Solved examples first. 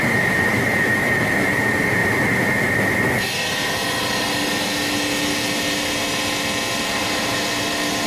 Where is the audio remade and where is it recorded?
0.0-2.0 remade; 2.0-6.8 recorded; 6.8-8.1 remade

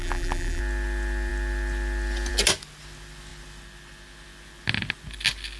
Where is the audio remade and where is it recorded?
0.0-0.6 remade; 0.6-5.6 recorded